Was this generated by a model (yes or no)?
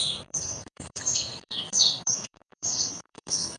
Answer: yes